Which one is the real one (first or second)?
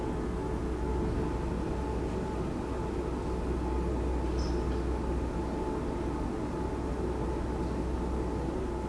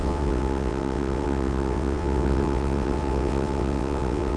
first